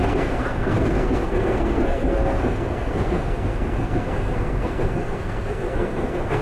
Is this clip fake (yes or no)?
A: yes